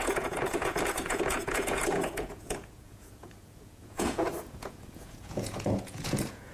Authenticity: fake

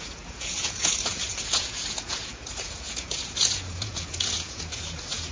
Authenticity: fake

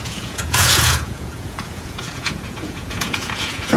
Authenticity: fake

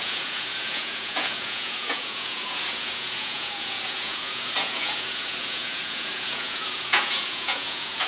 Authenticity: fake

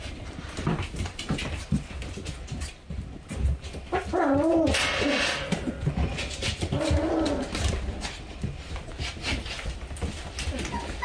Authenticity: real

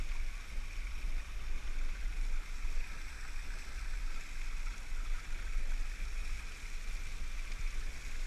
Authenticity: real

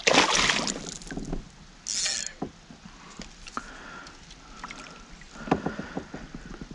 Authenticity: real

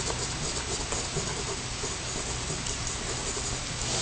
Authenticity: real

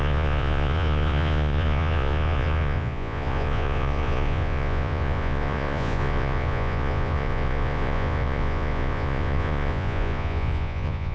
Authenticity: fake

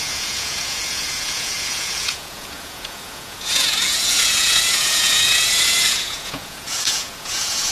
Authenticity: fake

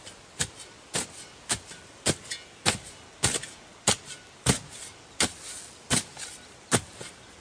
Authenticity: real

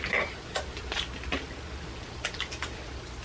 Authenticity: real